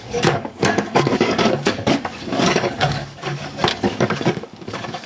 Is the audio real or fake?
fake